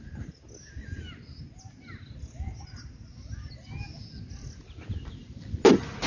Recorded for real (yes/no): yes